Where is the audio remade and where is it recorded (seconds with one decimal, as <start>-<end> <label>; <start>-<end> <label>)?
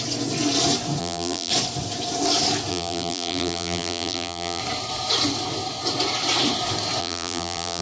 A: 0.0-1.0 recorded; 1.0-1.5 remade; 1.5-2.7 recorded; 2.7-4.6 remade; 4.6-7.0 recorded; 7.0-7.8 remade